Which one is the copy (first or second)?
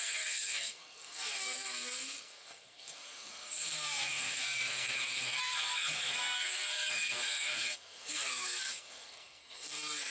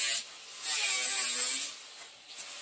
first